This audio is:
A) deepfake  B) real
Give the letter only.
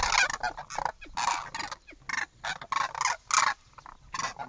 B